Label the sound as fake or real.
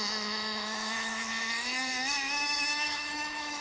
fake